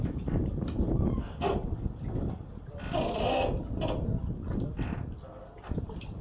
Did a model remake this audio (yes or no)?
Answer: no